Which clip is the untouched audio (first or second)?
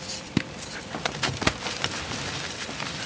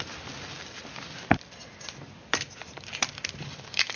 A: second